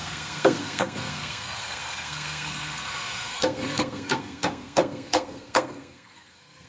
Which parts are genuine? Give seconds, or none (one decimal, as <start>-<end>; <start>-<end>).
none